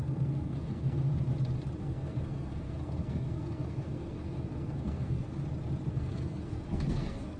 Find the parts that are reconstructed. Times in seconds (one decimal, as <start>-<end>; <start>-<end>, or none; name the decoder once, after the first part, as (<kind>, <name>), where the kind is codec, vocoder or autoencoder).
0.0-1.1 (codec, SNAC); 1.8-5.4; 5.9-7.4